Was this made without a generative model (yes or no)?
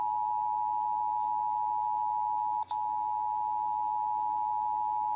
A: yes